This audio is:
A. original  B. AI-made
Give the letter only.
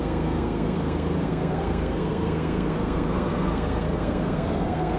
B